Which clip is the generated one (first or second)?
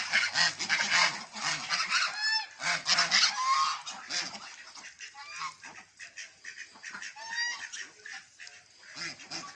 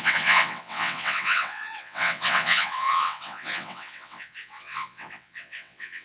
second